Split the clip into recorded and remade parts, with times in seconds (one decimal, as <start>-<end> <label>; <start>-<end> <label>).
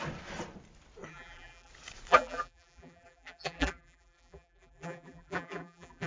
0.0-1.1 recorded; 1.1-1.7 remade; 1.7-2.1 recorded; 2.1-6.1 remade